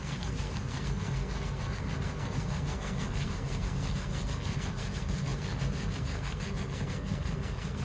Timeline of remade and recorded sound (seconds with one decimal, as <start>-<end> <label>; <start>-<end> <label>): 0.0-7.8 remade